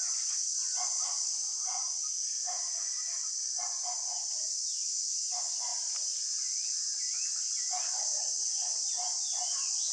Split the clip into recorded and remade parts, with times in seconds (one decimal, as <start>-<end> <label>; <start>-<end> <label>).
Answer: 0.0-9.9 recorded